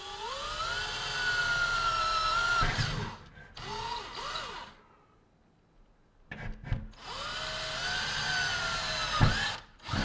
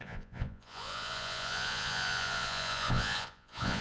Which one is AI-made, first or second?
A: second